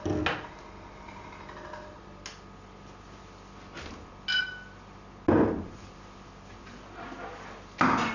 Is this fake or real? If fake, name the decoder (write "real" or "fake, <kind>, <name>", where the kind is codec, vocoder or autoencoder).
real